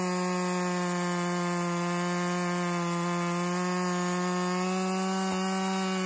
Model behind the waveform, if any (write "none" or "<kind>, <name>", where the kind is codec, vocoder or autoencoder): none